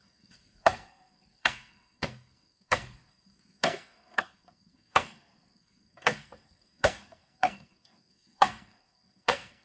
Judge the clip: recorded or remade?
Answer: remade